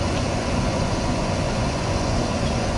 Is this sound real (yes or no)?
no